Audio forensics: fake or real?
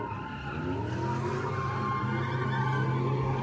real